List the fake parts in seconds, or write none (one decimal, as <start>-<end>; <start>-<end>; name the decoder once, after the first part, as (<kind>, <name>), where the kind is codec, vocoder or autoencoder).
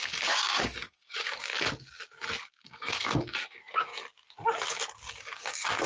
0.0-1.5 (codec, DAC); 2.5-3.9; 5.1-5.9